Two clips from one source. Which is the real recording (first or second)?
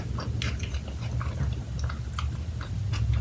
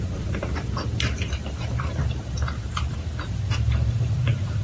first